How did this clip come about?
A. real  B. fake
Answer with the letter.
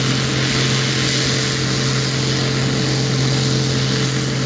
A